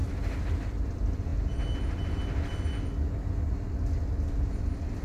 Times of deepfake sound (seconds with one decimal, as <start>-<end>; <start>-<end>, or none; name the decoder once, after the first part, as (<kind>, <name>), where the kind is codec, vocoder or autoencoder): none